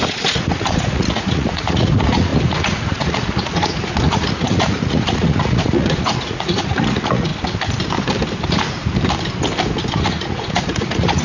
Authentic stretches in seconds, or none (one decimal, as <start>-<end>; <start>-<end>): 7.3-10.0